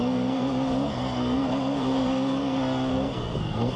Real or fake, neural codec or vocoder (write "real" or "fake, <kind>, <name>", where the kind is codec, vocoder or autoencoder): fake, codec, SNAC